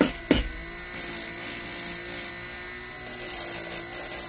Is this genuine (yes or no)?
yes